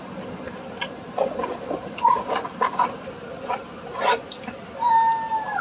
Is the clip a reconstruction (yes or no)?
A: no